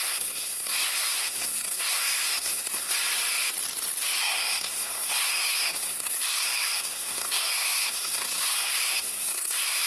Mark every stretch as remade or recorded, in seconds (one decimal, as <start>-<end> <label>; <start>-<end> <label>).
0.0-2.9 remade; 2.9-4.2 recorded; 4.2-9.9 remade